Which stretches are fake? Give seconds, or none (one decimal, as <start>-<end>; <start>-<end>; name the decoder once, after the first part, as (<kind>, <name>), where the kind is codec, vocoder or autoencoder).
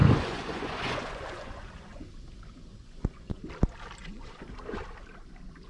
0.0-2.1 (vocoder, Vocos); 2.7-3.4; 4.0-4.5